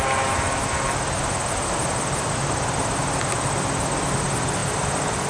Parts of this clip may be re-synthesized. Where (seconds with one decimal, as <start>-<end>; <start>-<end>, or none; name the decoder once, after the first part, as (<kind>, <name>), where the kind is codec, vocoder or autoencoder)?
none

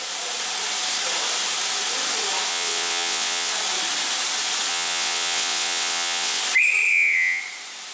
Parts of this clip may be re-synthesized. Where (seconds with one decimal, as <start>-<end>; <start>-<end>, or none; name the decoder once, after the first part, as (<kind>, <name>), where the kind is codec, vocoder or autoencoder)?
2.5-3.5 (vocoder, WaveNeXt); 4.7-6.4; 6.9-7.4

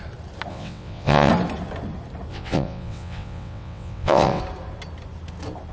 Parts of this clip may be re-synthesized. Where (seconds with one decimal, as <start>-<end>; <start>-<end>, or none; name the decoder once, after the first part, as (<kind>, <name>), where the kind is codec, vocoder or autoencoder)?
0.5-1.3 (vocoder, WaveNeXt); 2.3-4.4

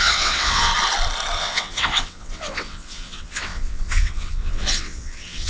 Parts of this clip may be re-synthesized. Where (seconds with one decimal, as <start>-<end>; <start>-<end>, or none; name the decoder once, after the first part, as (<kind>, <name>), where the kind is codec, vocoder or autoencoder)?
0.0-0.7 (vocoder, WaveNeXt); 1.4-5.5

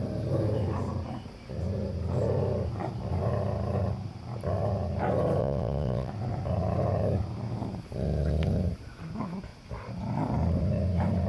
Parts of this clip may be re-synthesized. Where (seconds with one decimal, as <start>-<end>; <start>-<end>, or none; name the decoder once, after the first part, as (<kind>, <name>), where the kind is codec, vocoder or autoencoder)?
5.4-6.1 (vocoder, WaveNeXt)

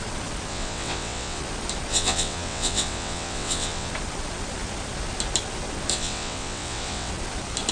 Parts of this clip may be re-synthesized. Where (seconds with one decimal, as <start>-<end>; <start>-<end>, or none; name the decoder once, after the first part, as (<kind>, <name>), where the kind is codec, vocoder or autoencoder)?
0.5-1.4 (vocoder, WaveNeXt); 1.9-3.9; 5.9-7.1